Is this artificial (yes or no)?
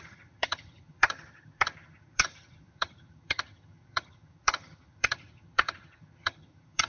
yes